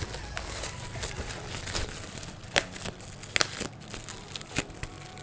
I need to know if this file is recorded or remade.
remade